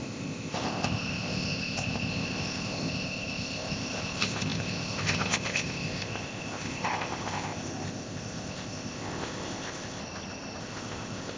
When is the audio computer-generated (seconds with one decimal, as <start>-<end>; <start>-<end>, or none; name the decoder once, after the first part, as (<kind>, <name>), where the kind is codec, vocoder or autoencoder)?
0.0-10.0 (codec, ZipCodec); 10.6-11.4